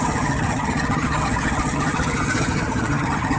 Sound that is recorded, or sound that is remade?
remade